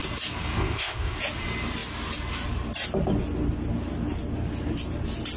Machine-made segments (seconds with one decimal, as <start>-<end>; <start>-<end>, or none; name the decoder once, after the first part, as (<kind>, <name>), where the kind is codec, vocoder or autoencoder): 0.6-1.2 (codec, ZipCodec)